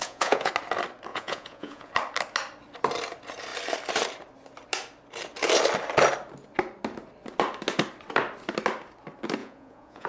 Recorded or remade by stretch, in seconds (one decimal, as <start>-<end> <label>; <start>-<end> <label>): 0.0-0.5 remade; 0.5-1.1 recorded; 1.1-1.9 remade; 1.9-9.4 recorded; 9.4-10.1 remade

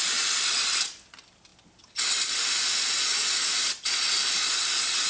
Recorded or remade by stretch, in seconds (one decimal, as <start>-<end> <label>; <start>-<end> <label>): 0.0-5.1 recorded